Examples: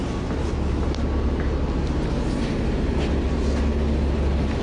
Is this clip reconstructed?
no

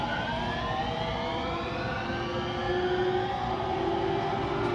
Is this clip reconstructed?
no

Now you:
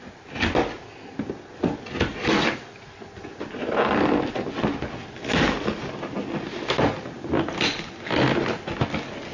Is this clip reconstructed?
no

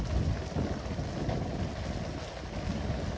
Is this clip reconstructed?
no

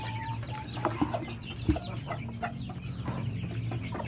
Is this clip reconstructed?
no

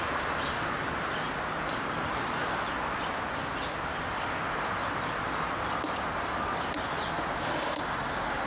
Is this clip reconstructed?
no